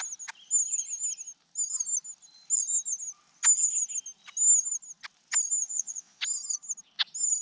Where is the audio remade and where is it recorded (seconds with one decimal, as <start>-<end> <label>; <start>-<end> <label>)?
0.0-5.6 recorded; 5.6-6.2 remade; 6.2-7.4 recorded